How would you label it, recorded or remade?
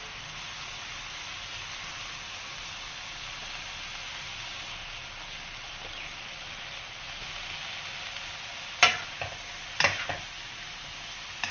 recorded